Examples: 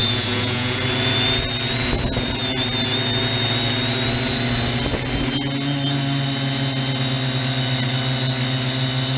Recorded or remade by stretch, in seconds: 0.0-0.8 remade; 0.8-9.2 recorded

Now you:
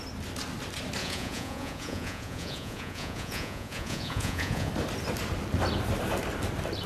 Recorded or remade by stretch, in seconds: 0.0-1.0 recorded; 1.0-4.7 remade; 4.7-6.9 recorded

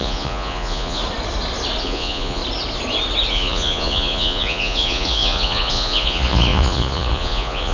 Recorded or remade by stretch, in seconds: 0.0-1.0 remade; 1.0-1.8 recorded; 1.8-2.4 remade; 2.4-3.3 recorded; 3.3-7.7 remade